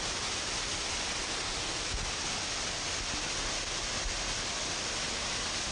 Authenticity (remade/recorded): recorded